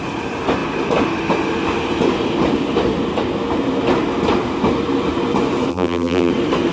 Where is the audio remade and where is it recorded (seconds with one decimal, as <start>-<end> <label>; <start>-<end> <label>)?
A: 0.0-5.7 recorded; 5.7-6.3 remade; 6.3-6.7 recorded